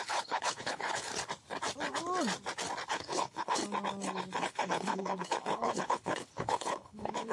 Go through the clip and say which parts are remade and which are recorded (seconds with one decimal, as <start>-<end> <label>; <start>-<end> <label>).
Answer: 0.0-1.1 remade; 1.1-2.9 recorded; 2.9-3.6 remade; 3.6-4.4 recorded; 4.4-7.3 remade

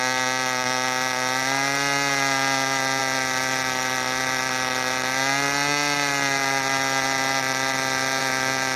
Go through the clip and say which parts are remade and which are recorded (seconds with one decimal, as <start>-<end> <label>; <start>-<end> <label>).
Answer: 0.0-8.8 recorded

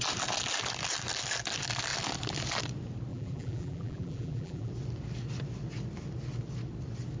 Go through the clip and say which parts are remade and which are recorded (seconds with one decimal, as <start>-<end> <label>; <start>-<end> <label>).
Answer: 0.0-3.1 recorded; 3.1-4.7 remade; 4.7-7.2 recorded

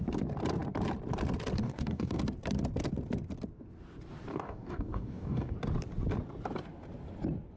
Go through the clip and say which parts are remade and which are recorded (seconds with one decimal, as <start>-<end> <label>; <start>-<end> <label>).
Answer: 0.0-1.6 recorded; 1.6-2.2 remade; 2.2-4.3 recorded; 4.3-5.5 remade; 5.5-7.6 recorded

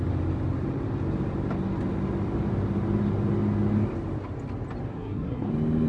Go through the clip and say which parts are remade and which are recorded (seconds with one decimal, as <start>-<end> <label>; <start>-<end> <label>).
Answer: 0.0-4.9 recorded; 4.9-5.5 remade; 5.5-5.9 recorded

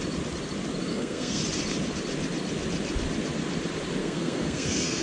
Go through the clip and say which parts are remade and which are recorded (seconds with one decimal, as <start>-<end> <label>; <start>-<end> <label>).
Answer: 0.0-0.9 recorded; 0.9-1.4 remade; 1.4-4.0 recorded; 4.0-5.0 remade